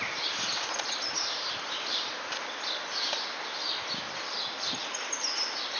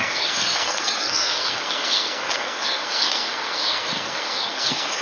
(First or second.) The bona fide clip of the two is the first